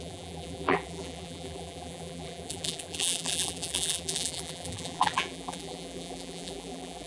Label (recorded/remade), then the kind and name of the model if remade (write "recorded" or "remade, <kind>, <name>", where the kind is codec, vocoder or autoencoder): remade, vocoder, BigVGAN v2